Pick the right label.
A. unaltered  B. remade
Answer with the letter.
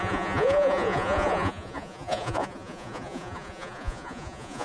B